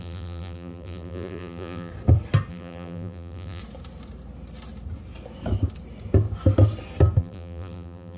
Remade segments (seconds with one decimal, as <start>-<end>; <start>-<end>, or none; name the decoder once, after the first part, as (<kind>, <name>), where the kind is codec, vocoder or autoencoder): 0.0-1.9 (vocoder, BigVGAN v2); 2.5-3.6; 7.2-8.2